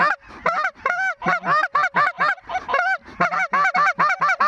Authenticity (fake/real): real